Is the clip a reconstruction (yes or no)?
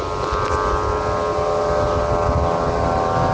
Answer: no